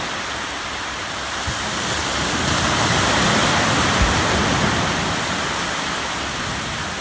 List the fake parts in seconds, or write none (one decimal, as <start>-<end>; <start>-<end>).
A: none